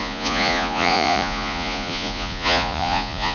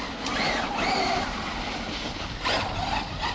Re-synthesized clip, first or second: first